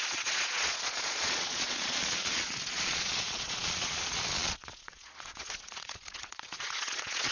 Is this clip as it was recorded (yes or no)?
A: no